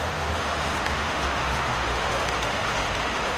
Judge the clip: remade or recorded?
remade